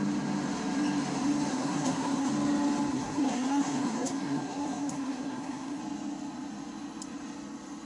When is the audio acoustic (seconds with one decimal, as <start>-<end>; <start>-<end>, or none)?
0.0-1.5; 2.3-2.9; 5.8-7.9